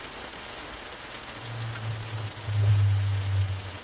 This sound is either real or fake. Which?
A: real